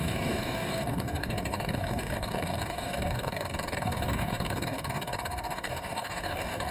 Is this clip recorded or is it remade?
remade